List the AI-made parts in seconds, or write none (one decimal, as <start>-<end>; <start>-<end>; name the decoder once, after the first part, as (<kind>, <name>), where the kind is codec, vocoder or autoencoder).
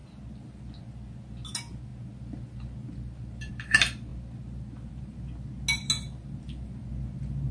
none